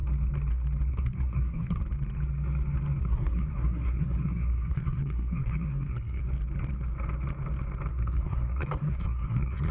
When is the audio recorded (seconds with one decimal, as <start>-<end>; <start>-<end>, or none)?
0.0-0.9; 1.8-3.0; 6.2-7.9